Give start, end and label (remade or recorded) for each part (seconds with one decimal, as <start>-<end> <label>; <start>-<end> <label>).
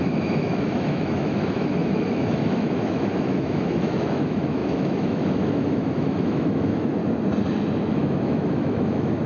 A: 0.0-7.0 remade; 7.0-7.9 recorded; 7.9-9.3 remade